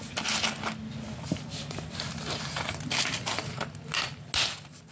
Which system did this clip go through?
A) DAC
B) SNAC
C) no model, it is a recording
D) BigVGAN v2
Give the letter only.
C